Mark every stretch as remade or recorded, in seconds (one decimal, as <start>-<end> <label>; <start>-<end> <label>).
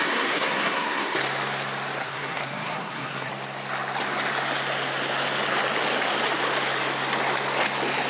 0.0-1.2 remade; 1.2-2.0 recorded; 2.0-3.3 remade; 3.3-8.1 recorded